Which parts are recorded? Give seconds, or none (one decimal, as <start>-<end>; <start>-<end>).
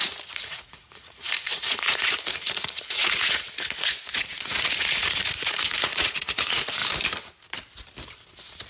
6.8-8.7